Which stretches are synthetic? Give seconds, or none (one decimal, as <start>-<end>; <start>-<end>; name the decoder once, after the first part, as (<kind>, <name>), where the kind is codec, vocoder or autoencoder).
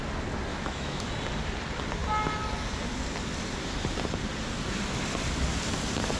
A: 0.5-1.1 (autoencoder, DAC-VAE)